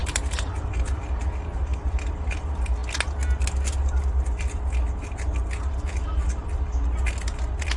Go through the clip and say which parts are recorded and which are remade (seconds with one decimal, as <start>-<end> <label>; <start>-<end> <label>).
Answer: 0.0-1.2 remade; 1.2-1.7 recorded; 1.7-2.3 remade; 2.3-7.8 recorded